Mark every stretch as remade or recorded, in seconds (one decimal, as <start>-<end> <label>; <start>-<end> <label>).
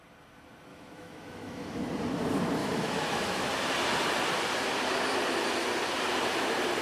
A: 0.0-0.7 recorded; 0.7-1.8 remade; 1.8-2.6 recorded; 2.6-3.5 remade; 3.5-6.8 recorded